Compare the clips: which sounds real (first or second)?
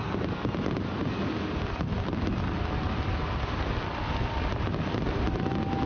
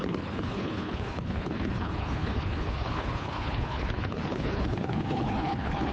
first